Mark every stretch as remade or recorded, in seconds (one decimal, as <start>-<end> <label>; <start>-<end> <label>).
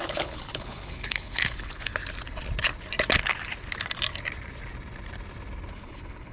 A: 0.0-1.9 remade; 1.9-5.7 recorded; 5.7-6.3 remade